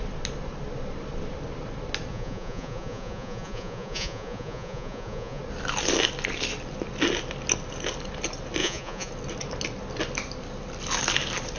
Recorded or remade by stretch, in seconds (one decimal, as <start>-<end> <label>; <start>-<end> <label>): 0.0-2.1 recorded; 2.1-5.4 remade; 5.4-8.6 recorded; 8.6-9.1 remade; 9.1-11.6 recorded